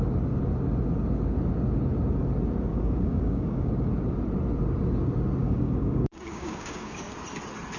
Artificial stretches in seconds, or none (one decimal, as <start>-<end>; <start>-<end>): 2.7-3.7; 5.4-7.0